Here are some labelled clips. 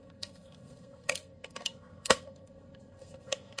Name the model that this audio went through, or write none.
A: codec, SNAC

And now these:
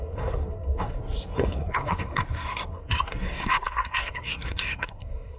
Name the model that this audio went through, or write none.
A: codec, SNAC